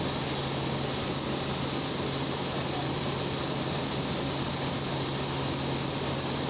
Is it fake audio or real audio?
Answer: real